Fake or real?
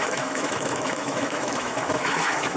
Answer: fake